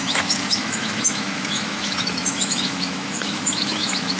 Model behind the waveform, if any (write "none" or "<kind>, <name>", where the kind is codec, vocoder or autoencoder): autoencoder, DAC-VAE